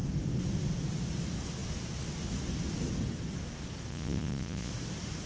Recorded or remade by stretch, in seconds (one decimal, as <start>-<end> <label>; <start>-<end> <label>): 0.0-3.9 recorded; 3.9-4.7 remade; 4.7-5.3 recorded